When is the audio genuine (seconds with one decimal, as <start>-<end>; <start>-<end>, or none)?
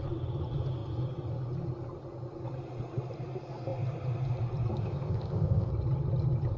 0.0-4.8; 5.7-6.6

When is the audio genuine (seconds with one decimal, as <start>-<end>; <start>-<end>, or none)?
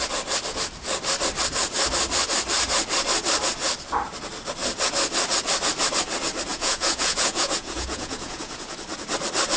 0.0-6.5; 8.7-9.6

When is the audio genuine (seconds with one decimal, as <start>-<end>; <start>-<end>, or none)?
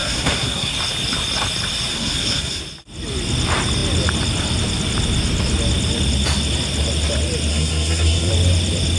0.7-1.9; 2.6-7.5; 8.3-9.0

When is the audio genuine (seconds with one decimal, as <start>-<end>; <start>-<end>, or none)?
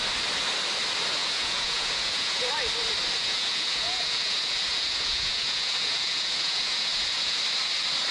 0.0-1.2; 2.5-3.2; 7.4-8.1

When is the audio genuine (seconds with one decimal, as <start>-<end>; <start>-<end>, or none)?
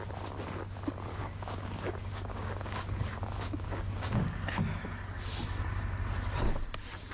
0.0-1.1; 4.6-7.1